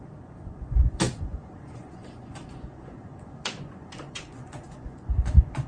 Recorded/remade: remade